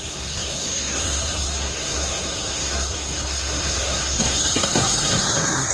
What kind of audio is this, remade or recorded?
remade